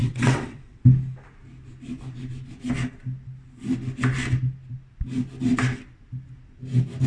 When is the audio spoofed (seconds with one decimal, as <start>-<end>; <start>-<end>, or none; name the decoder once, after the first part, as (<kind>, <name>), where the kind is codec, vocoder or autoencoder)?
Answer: 0.0-0.8 (vocoder, WaveNeXt)